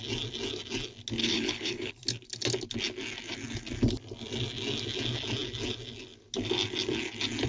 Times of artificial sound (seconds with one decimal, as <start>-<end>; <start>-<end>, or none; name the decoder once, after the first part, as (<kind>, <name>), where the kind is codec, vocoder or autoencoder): 1.2-1.9 (codec, HILCodec)